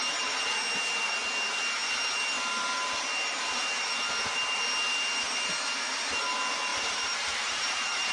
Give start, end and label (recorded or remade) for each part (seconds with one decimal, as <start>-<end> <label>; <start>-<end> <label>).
0.0-6.7 recorded; 6.7-8.1 remade